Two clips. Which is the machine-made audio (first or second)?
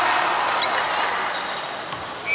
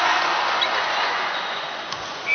second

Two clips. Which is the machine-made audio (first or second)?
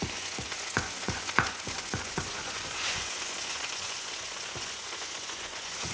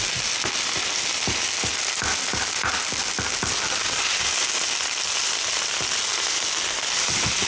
first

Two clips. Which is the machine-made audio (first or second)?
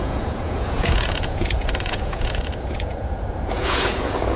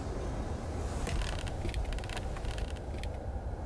first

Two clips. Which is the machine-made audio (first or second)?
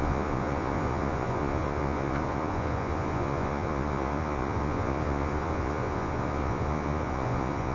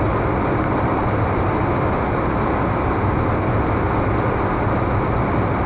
first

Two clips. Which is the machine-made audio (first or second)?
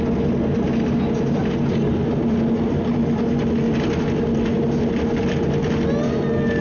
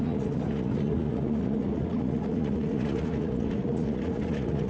second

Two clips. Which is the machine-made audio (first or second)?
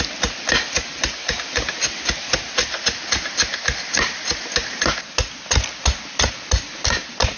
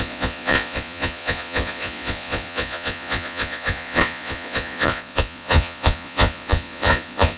second